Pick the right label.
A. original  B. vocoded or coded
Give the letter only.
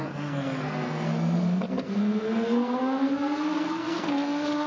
B